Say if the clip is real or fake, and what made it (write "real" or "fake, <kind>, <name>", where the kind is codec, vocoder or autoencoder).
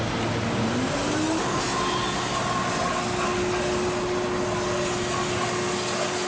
real